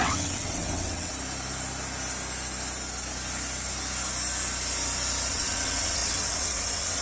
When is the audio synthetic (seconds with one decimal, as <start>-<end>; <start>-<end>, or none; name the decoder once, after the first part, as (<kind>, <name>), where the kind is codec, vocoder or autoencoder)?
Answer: 0.0-1.1 (vocoder, WaveNeXt); 5.3-7.0